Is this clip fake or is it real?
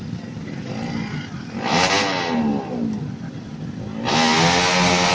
real